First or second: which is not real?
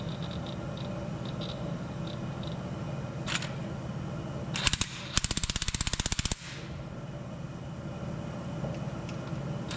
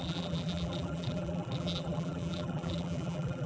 second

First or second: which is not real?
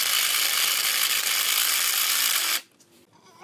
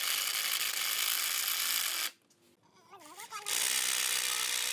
first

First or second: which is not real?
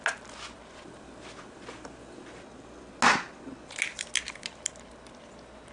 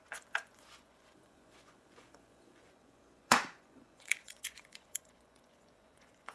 second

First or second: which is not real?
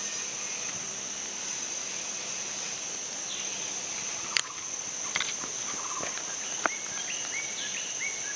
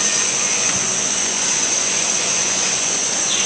second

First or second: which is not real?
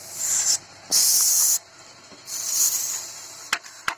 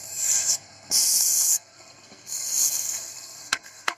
second